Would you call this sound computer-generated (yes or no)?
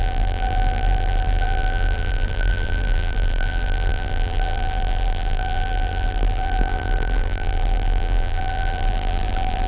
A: yes